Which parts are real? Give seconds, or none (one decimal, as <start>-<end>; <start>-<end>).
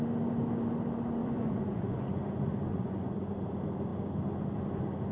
0.0-1.2; 2.2-2.7; 3.3-5.1